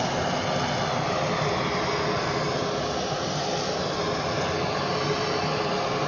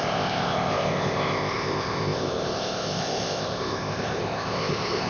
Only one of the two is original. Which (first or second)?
first